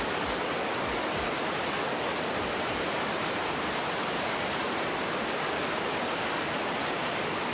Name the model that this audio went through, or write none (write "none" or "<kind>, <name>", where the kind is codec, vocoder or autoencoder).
none